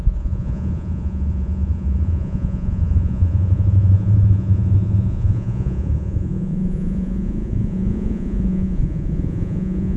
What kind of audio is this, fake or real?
fake